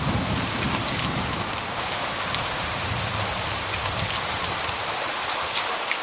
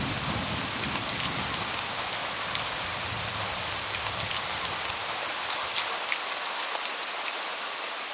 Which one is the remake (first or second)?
first